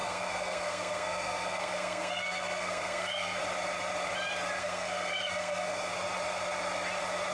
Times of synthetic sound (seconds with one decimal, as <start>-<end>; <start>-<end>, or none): 0.0-3.4; 4.6-5.9